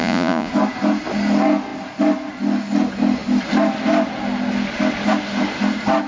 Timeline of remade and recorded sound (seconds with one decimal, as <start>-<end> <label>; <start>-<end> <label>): 0.0-0.5 remade; 0.5-6.1 recorded